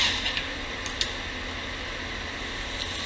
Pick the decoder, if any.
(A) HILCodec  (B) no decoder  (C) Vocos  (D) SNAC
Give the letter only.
B